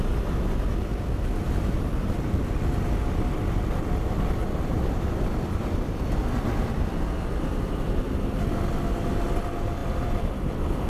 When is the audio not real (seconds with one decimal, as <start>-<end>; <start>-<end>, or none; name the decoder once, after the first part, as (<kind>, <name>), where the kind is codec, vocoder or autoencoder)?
4.4-8.0 (vocoder, BigVGAN v2); 9.8-10.9